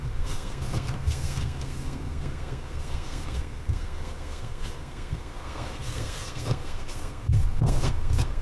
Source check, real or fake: fake